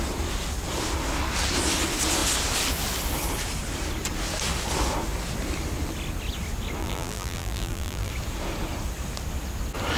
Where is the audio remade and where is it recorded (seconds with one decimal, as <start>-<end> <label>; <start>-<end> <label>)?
0.0-6.8 recorded; 6.8-8.1 remade; 8.1-10.0 recorded